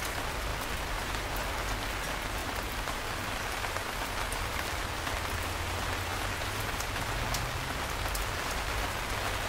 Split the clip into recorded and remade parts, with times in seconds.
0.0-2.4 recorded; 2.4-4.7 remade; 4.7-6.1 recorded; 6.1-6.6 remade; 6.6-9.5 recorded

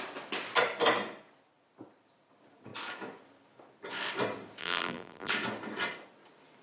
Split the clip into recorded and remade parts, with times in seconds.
0.0-4.6 recorded; 4.6-5.3 remade; 5.3-6.6 recorded

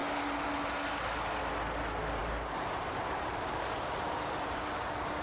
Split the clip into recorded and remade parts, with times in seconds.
0.0-2.2 recorded; 2.2-4.6 remade; 4.6-5.2 recorded

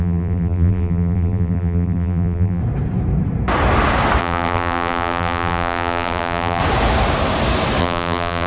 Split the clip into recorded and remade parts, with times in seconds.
0.0-2.6 remade; 2.6-4.2 recorded; 4.2-6.6 remade; 6.6-7.8 recorded; 7.8-8.5 remade